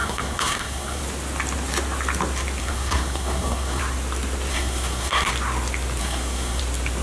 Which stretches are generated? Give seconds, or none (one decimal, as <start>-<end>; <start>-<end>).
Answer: 0.0-1.0; 2.6-3.8; 4.5-5.3; 6.0-6.6

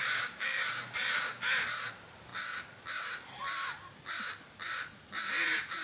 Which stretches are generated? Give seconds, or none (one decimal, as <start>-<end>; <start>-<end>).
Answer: 0.0-0.6

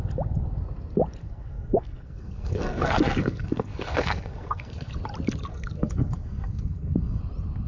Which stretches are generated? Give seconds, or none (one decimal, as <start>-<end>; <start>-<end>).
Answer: 1.2-4.9; 5.5-7.2

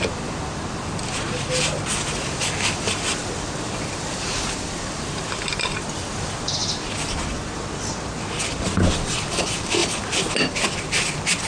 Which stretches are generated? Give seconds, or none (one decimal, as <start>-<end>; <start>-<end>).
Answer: 0.0-6.6; 7.9-9.8